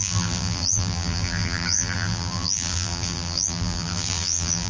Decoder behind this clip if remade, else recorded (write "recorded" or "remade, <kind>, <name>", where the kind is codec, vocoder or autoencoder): remade, vocoder, BigVGAN v2